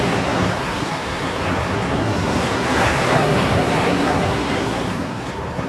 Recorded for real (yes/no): no